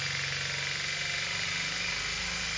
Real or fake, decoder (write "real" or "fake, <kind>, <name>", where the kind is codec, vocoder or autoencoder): real